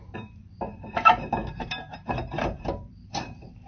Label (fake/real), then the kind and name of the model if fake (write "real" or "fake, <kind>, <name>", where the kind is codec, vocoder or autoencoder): fake, vocoder, BigVGAN v2